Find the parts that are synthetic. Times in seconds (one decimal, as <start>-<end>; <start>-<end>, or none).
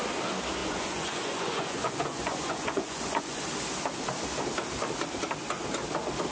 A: 0.6-3.4